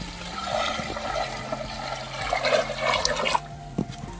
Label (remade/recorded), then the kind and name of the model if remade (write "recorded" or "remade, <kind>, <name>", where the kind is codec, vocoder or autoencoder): recorded